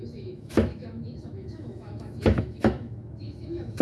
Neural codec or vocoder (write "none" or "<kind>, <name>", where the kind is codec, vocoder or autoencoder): autoencoder, DAC-VAE